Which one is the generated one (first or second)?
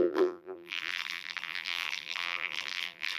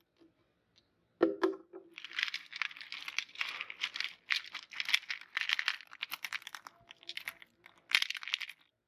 first